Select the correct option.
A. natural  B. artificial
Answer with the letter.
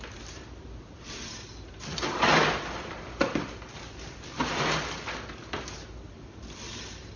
A